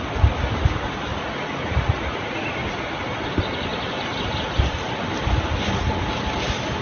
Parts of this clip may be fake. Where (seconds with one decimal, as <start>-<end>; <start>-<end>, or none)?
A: 1.1-2.5